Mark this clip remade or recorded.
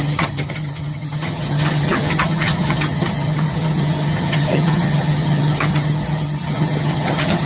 remade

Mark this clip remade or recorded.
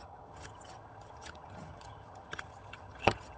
remade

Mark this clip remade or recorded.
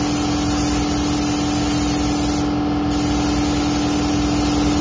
recorded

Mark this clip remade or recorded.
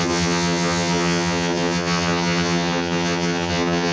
remade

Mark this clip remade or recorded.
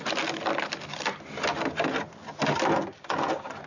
recorded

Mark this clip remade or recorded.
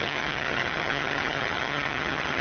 remade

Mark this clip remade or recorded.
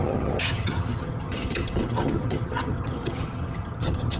remade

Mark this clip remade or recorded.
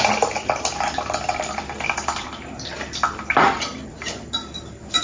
recorded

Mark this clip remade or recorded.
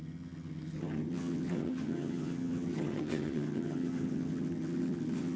remade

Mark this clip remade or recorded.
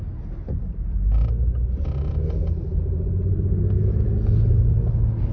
recorded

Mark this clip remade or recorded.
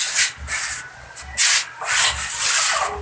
recorded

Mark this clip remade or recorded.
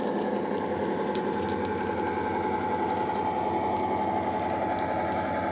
recorded